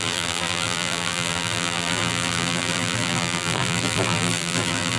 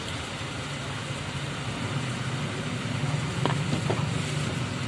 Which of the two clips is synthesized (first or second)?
first